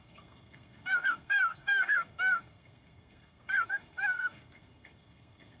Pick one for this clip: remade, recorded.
remade